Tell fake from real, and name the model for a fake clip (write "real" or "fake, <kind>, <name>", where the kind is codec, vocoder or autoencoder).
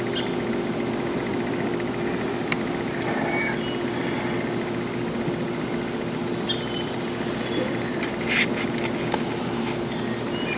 real